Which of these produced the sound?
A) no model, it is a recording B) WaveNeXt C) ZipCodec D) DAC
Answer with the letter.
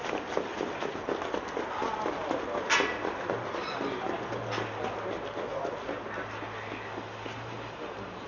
A